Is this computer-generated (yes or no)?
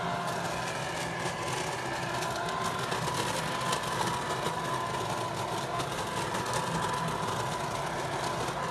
no